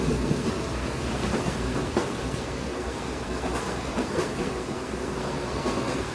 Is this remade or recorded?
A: remade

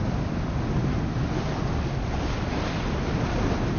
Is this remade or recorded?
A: recorded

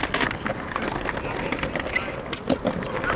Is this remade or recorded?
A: recorded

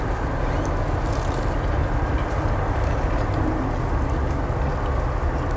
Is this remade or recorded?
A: recorded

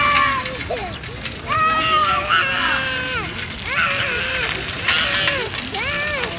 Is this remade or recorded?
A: recorded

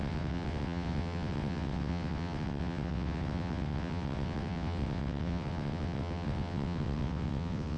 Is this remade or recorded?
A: remade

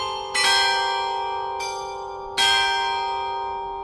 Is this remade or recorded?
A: recorded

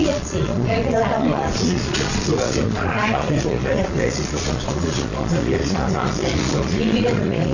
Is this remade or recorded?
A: remade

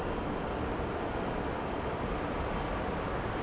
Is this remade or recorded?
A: recorded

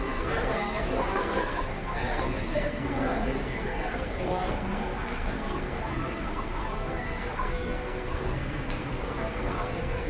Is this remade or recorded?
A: remade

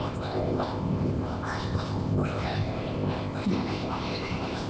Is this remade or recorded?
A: remade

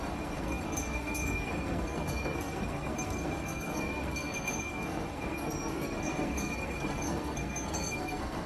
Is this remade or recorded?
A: remade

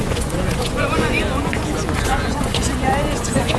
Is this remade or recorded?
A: remade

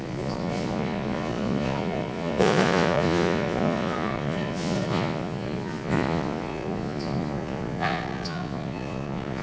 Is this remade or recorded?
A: remade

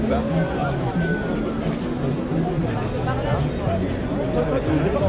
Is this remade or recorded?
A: recorded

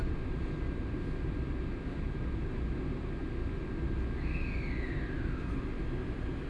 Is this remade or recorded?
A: recorded